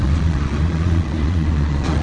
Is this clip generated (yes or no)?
yes